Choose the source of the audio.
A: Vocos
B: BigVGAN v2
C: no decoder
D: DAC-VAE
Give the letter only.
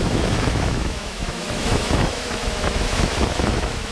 D